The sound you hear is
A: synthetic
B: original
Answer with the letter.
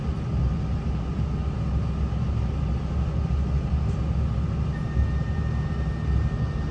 B